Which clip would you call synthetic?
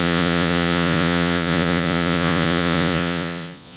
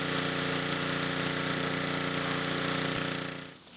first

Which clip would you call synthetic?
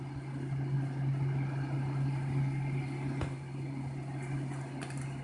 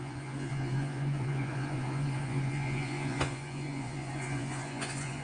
second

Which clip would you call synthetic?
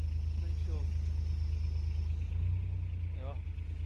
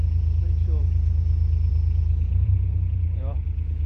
second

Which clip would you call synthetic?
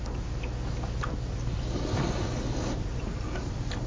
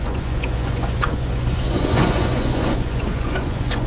second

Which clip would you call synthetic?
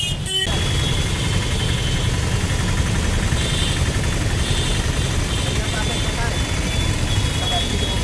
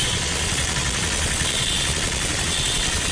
second